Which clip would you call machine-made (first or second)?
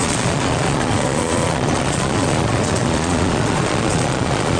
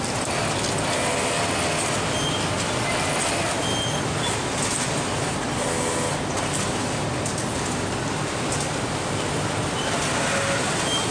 first